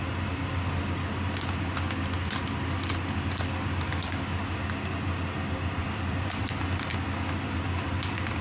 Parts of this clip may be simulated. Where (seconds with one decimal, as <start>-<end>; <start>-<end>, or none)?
5.8-6.5; 6.9-8.4